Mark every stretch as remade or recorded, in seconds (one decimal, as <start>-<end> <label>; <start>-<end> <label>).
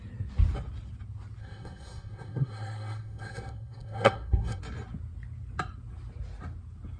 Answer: 0.0-1.4 recorded; 1.4-4.6 remade; 4.6-7.0 recorded